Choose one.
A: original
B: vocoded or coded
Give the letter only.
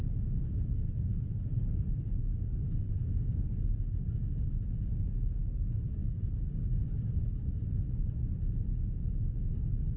A